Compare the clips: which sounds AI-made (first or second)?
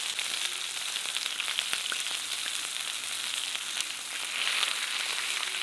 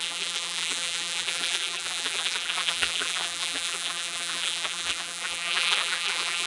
second